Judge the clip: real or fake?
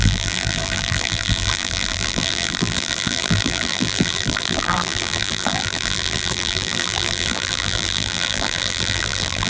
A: fake